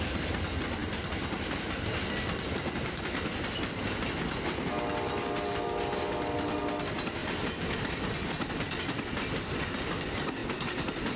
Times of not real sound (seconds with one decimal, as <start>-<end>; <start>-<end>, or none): none